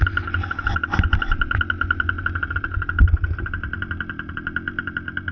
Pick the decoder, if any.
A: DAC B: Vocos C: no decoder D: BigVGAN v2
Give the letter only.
C